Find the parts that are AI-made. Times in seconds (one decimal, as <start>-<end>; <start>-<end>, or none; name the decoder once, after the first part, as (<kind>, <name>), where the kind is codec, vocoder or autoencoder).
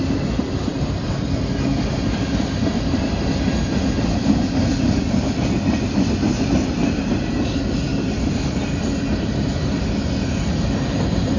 7.9-9.2 (vocoder, BigVGAN v2)